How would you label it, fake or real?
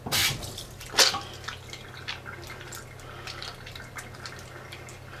real